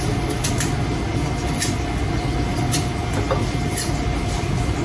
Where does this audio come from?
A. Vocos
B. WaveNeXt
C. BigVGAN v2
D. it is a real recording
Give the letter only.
D